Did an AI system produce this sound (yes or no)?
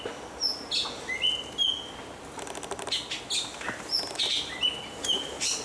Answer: no